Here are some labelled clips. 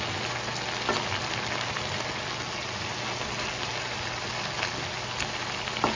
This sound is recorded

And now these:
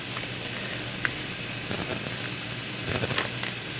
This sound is recorded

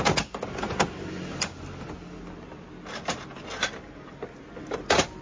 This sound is recorded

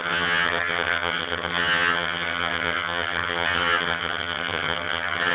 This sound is remade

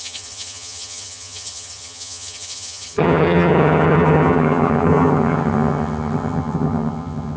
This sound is remade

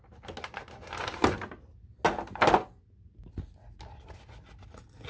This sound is recorded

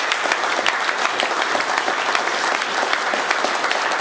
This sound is recorded